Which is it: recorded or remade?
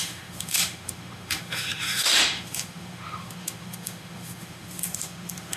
remade